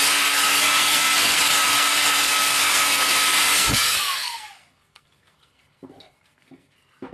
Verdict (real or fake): fake